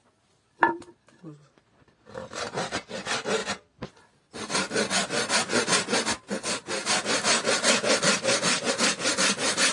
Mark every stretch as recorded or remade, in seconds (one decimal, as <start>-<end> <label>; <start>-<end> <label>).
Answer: 0.0-9.7 recorded